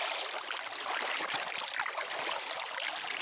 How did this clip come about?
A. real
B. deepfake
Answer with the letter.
A